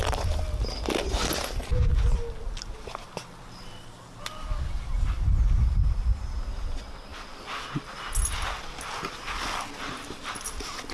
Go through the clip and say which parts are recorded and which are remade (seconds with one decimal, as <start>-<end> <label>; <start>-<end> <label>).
0.0-10.9 recorded